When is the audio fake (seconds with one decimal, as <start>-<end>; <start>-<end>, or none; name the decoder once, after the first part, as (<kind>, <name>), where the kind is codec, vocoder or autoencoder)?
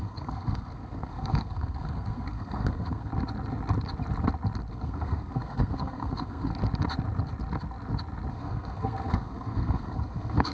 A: 0.0-3.1 (codec, SNAC); 4.7-6.5; 8.3-10.5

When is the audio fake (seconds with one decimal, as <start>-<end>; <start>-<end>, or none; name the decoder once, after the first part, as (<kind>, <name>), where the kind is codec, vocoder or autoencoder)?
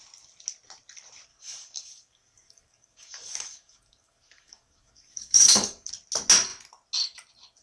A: 1.3-5.9 (codec, DAC)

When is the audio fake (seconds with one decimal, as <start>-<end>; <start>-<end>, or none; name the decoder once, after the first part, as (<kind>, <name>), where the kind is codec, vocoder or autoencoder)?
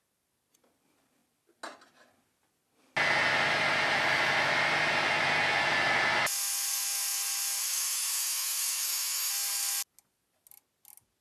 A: 7.6-9.3 (autoencoder, DAC-VAE)